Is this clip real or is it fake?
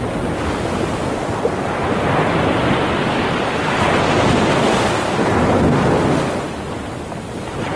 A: real